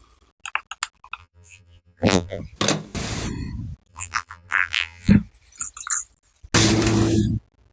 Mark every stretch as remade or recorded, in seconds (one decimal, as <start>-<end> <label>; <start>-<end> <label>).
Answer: 0.0-1.2 recorded; 1.2-2.4 remade; 2.4-3.9 recorded; 3.9-5.1 remade; 5.1-7.7 recorded